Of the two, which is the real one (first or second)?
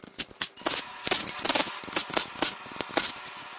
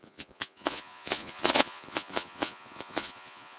first